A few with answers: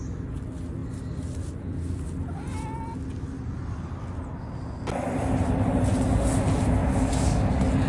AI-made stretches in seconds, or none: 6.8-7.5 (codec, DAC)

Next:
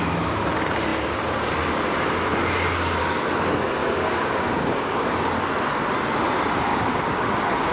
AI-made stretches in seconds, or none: 3.8-5.1 (codec, DAC); 6.7-7.3

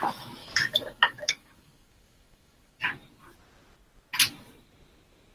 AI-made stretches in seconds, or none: 0.4-2.8 (codec, DAC)

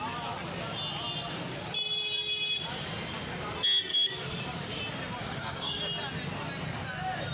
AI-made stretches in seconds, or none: 3.9-4.8 (codec, DAC); 5.2-5.8

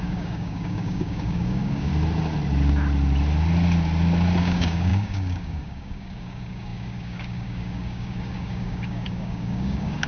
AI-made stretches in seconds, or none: 0.0-1.9 (codec, DAC); 4.4-10.1

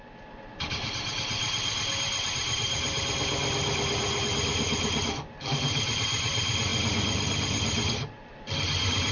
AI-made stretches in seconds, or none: none

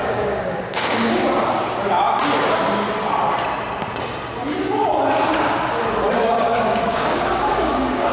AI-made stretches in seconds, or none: 0.0-1.2 (codec, DAC); 6.1-8.1